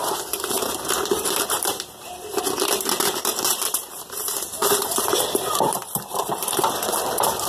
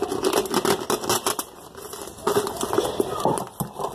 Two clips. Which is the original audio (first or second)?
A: second